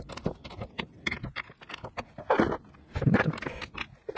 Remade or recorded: recorded